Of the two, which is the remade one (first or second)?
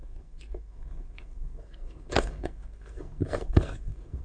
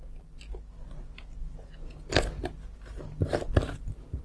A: first